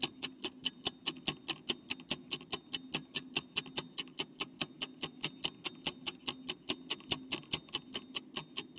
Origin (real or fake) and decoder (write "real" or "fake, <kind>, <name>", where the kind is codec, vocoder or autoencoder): real